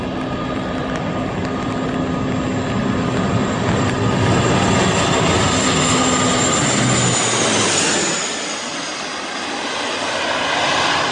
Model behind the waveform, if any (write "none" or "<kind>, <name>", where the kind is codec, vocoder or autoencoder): none